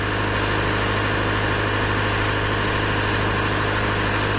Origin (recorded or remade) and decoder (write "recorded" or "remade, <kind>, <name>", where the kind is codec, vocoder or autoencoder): recorded